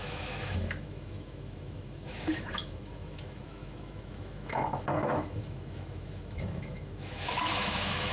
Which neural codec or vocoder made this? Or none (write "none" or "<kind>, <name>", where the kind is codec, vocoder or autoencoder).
autoencoder, DAC-VAE